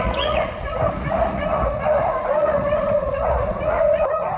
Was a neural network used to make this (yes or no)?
yes